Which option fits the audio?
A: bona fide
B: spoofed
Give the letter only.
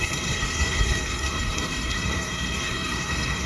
B